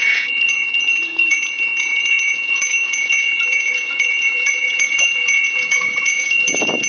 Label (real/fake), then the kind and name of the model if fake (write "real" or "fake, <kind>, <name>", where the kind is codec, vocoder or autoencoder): fake, vocoder, Vocos